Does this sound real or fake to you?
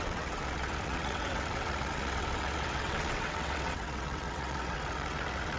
fake